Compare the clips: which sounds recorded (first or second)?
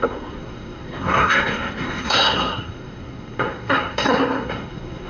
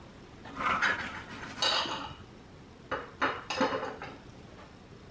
second